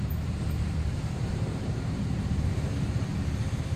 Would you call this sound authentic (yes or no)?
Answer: no